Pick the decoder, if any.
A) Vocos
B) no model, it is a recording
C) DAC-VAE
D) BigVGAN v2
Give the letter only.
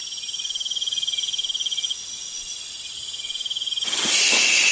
D